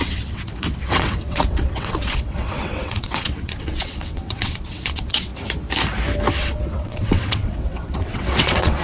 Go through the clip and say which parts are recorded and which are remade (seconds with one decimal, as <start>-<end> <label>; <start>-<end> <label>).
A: 0.0-5.3 remade; 5.3-6.3 recorded; 6.3-8.8 remade